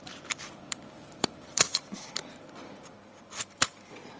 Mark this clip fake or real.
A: fake